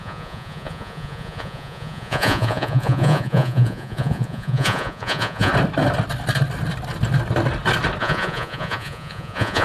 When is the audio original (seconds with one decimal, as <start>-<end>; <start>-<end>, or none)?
5.5-8.0